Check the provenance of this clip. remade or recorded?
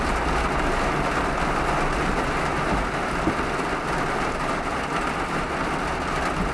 recorded